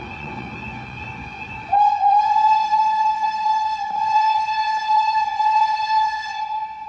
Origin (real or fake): fake